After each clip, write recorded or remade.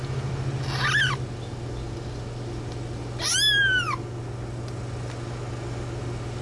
recorded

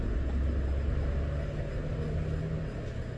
recorded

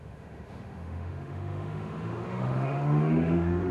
remade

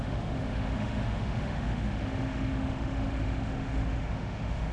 remade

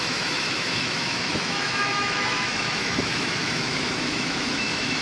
remade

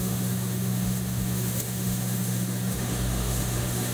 remade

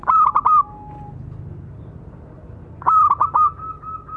recorded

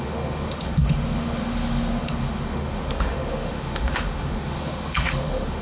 remade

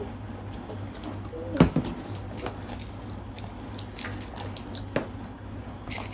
recorded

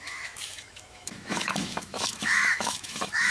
remade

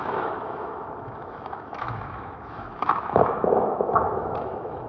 remade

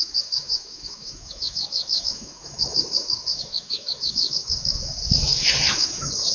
remade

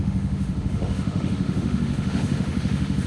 remade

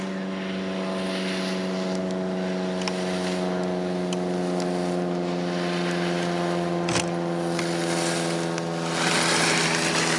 recorded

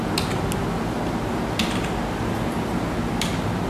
recorded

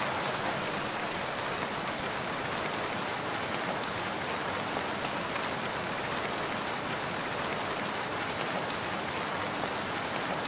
recorded